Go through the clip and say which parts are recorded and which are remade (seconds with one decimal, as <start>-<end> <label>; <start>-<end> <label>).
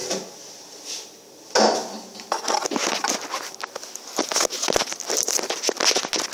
0.0-6.3 recorded